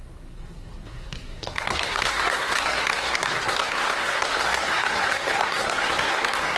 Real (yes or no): no